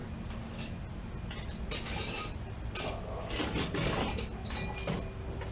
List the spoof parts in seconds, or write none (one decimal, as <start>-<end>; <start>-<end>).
none

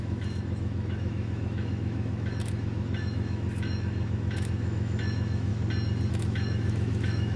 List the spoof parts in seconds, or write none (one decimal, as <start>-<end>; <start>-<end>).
0.0-5.5; 6.1-7.4